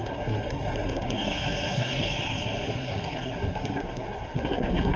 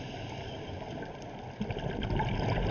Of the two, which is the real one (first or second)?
second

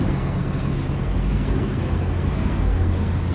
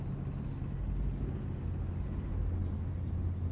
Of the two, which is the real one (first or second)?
second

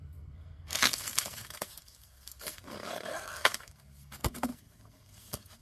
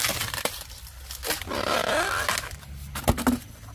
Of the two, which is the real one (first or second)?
second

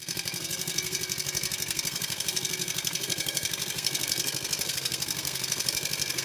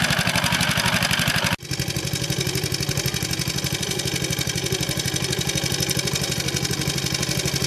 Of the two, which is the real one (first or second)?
second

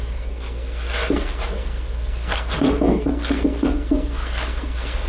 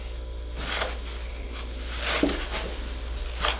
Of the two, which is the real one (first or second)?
second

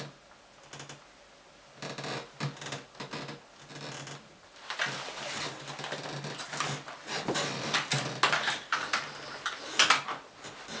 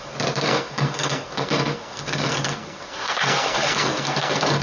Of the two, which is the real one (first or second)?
first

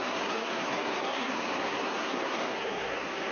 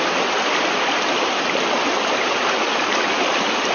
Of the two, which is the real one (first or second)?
second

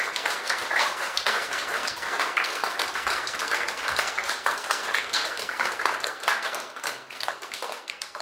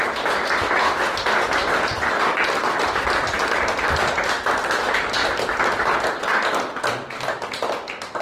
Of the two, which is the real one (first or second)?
second